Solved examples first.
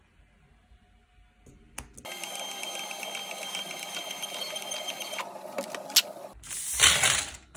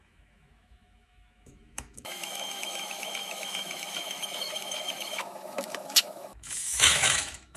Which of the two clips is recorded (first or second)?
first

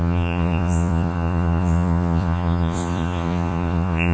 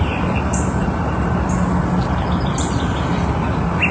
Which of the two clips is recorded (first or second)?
second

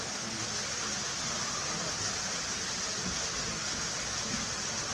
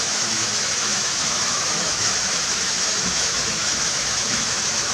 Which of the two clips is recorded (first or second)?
first